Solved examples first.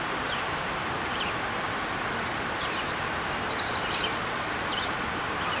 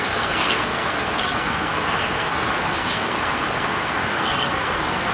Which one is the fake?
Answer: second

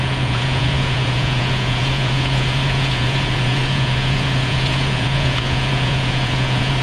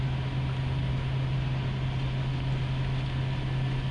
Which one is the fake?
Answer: first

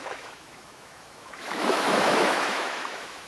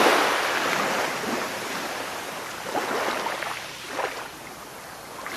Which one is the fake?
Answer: first